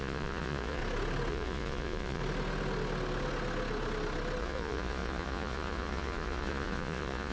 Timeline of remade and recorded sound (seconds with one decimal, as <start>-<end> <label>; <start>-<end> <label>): 0.0-0.8 remade; 0.8-1.3 recorded; 1.3-2.2 remade; 2.2-4.4 recorded; 4.4-7.3 remade